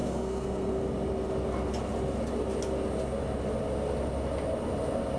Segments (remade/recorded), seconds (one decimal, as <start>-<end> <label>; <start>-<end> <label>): 0.0-0.8 remade; 0.8-5.2 recorded